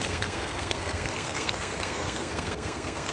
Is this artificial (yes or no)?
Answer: yes